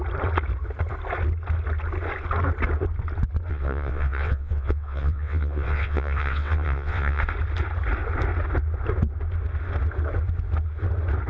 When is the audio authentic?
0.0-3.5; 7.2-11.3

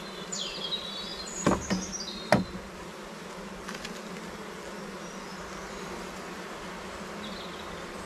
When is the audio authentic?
0.0-8.1

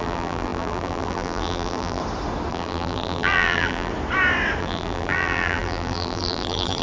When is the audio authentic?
2.0-2.5; 3.9-4.6

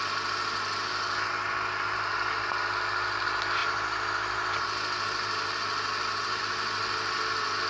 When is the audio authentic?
0.0-7.7